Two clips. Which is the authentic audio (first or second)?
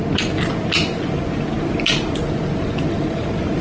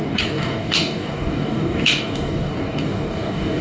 first